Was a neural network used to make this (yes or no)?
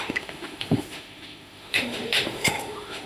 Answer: yes